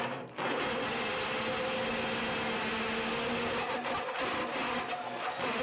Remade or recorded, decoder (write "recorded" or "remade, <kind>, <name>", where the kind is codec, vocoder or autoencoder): recorded